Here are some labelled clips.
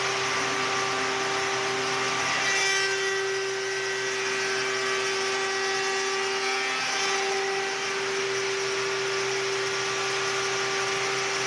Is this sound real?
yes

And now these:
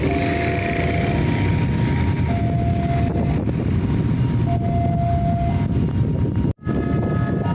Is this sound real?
yes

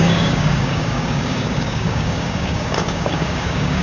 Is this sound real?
no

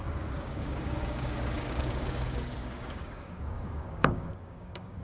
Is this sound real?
no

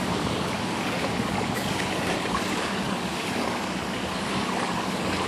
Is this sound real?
no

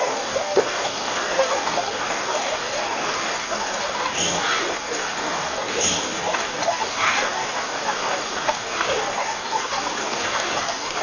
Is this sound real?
no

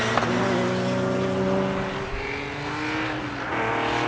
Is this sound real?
yes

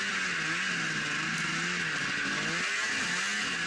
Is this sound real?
yes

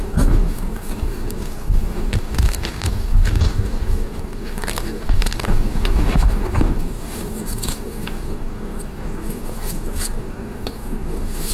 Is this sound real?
no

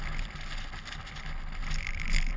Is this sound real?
yes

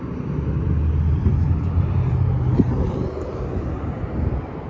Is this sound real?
yes